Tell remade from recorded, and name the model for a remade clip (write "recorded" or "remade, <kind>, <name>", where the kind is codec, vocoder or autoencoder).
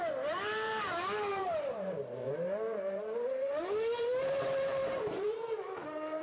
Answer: remade, vocoder, BigVGAN v2